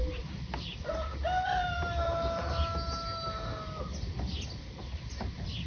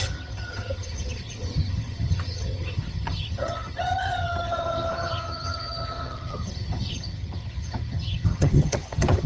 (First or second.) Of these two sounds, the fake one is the second